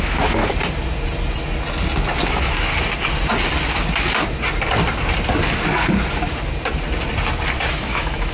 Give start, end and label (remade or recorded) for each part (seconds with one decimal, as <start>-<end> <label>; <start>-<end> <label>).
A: 0.0-0.4 remade; 0.4-2.3 recorded; 2.3-2.7 remade; 2.7-7.7 recorded; 7.7-8.3 remade